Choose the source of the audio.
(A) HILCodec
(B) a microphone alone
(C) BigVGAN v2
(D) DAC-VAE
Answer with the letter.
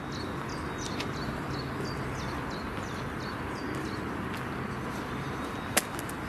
B